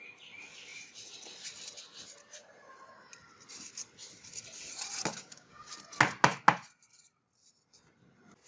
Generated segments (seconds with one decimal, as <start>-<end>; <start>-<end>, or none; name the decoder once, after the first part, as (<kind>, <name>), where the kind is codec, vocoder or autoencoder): 5.1-5.7 (codec, DAC)